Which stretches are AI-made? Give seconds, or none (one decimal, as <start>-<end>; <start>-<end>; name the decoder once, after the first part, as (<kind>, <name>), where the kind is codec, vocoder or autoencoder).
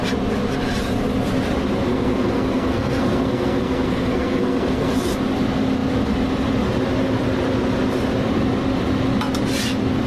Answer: 1.9-5.0 (codec, SNAC)